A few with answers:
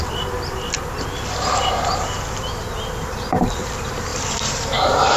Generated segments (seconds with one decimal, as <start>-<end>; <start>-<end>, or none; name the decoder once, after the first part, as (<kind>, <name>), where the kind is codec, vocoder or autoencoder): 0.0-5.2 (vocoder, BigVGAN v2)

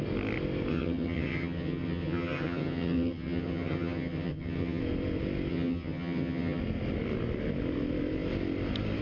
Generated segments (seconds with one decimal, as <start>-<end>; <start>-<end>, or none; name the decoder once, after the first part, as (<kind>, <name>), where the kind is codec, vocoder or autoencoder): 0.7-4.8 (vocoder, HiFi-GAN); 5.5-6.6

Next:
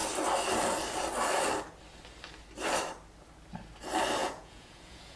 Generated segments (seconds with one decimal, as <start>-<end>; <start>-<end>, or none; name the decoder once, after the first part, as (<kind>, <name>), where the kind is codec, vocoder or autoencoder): 4.2-5.2 (vocoder, Vocos)